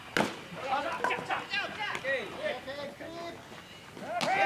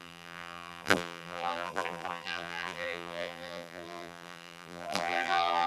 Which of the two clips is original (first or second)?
first